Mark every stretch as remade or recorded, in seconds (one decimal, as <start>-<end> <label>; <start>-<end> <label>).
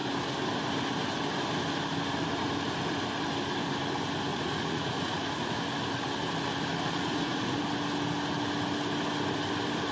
0.0-4.3 recorded; 4.3-5.6 remade; 5.6-6.7 recorded; 6.7-7.6 remade; 7.6-9.9 recorded